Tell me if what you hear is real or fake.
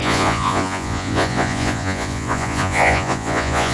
fake